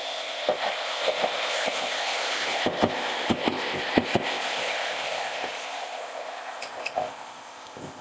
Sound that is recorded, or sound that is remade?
remade